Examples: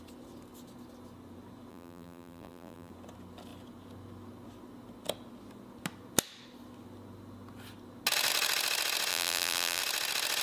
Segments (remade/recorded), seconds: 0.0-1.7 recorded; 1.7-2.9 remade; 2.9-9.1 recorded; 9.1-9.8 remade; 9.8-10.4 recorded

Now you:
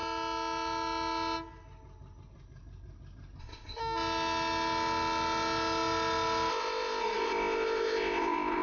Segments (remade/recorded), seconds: 0.0-3.4 recorded; 3.4-3.8 remade; 3.8-6.5 recorded; 6.5-8.6 remade

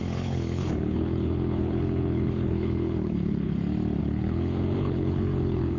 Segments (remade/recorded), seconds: 0.0-3.5 remade; 3.5-4.0 recorded; 4.0-5.8 remade

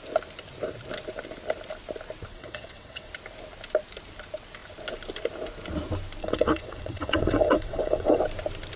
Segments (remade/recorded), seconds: 0.0-2.3 recorded; 2.3-3.1 remade; 3.1-6.2 recorded; 6.2-8.2 remade; 8.2-8.8 recorded

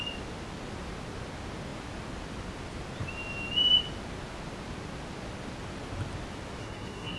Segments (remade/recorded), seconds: 0.0-6.6 recorded; 6.6-7.2 remade